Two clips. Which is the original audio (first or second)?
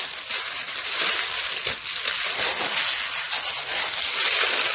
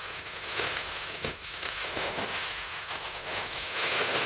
first